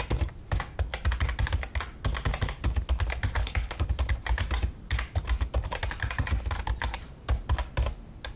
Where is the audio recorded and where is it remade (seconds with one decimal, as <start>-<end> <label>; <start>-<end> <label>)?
0.0-3.4 recorded; 3.4-3.9 remade; 3.9-8.4 recorded